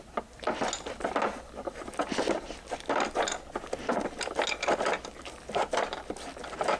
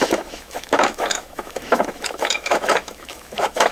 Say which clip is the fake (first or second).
second